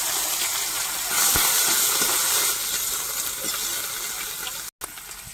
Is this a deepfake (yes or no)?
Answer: no